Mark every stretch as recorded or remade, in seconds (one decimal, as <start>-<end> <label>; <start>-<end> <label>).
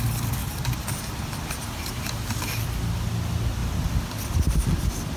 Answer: 0.0-0.4 recorded; 0.4-2.4 remade; 2.4-5.2 recorded